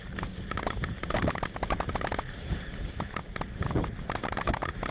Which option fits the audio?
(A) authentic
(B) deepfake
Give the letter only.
B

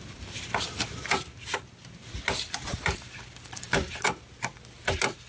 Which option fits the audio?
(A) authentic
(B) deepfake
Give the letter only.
A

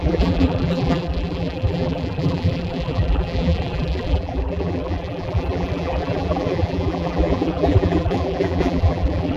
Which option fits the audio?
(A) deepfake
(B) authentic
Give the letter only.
A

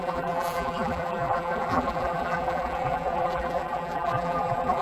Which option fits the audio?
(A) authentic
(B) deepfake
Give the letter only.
B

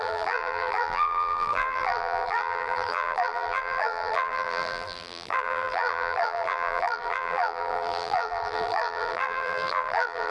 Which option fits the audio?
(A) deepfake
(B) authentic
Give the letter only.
A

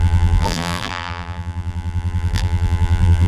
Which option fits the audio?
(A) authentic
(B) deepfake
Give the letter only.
B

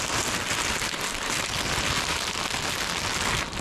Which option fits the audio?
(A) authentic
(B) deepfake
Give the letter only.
A